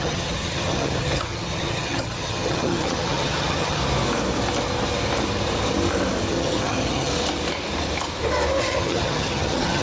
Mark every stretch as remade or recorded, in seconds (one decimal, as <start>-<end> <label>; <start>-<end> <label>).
0.0-3.8 remade; 3.8-6.3 recorded; 6.3-7.1 remade; 7.1-8.6 recorded; 8.6-9.8 remade